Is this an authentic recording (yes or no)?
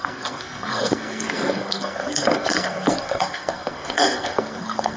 no